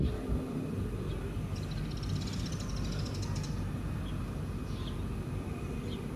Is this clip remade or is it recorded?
recorded